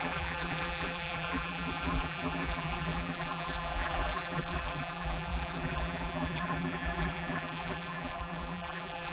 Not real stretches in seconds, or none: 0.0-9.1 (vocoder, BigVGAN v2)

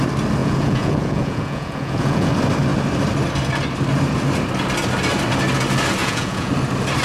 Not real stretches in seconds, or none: 0.4-2.3 (vocoder, Vocos); 6.0-6.5

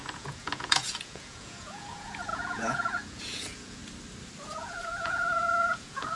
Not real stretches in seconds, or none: 0.0-3.8 (vocoder, Vocos); 4.6-6.1

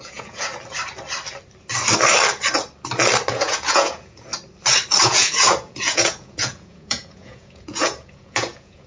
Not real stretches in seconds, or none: 0.0-0.5 (vocoder, Vocos); 3.3-4.3; 5.0-8.9

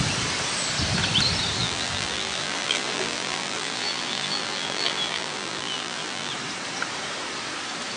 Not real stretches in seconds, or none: 1.6-6.3 (vocoder, BigVGAN v2)

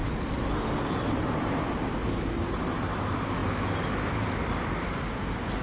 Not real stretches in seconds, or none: 0.0-1.6 (vocoder, BigVGAN v2)

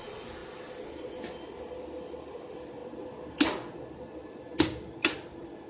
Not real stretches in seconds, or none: none

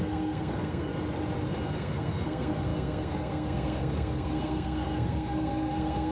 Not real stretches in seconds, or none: 0.0-0.9 (codec, SNAC); 1.8-6.1